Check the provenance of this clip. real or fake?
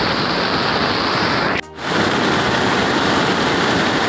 real